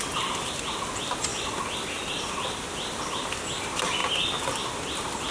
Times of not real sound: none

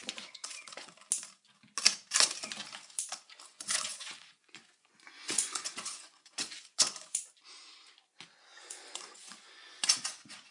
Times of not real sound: 0.0-0.9 (vocoder, Vocos); 3.5-7.2; 8.5-10.5